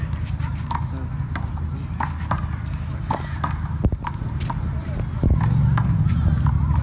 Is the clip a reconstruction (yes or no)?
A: no